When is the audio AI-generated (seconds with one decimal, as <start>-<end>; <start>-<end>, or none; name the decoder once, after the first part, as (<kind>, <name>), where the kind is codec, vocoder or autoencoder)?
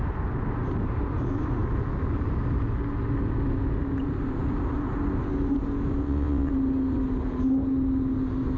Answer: 6.0-6.5 (vocoder, WaveNeXt)